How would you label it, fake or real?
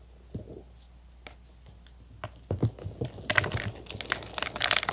real